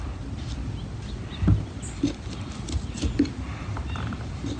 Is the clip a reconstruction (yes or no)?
no